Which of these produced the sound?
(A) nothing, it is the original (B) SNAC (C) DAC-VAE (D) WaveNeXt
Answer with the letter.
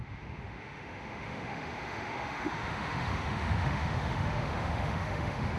C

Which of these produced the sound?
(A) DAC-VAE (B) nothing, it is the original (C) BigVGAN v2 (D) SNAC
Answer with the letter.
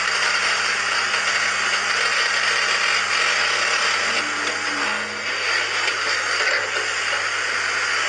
B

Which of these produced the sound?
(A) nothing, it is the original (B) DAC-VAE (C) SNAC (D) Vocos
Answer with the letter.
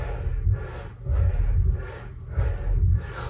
A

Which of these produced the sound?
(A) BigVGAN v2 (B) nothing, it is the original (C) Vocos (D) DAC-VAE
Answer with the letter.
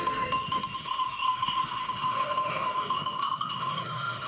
D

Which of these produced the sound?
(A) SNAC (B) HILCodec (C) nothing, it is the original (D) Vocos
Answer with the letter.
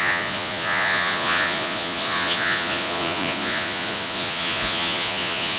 D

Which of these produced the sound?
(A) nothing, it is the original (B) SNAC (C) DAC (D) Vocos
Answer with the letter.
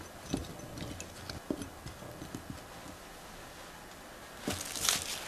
A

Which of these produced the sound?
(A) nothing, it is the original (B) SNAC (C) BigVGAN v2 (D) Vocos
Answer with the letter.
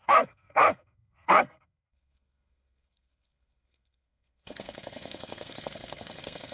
B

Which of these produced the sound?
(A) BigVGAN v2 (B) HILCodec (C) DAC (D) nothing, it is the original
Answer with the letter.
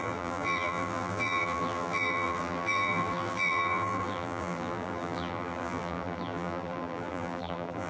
A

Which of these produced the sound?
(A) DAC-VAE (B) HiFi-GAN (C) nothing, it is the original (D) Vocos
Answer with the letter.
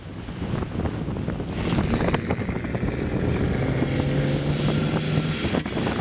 C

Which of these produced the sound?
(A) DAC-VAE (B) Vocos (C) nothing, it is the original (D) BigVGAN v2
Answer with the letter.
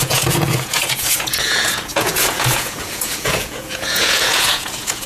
B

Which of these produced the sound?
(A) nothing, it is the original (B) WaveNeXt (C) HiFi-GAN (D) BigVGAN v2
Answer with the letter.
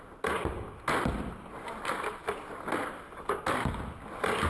A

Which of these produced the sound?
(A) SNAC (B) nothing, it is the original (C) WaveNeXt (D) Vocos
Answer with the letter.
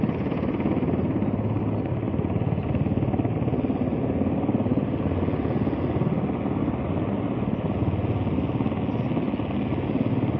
B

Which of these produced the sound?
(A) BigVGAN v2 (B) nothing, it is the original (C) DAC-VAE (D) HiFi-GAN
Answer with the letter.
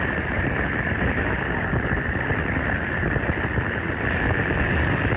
B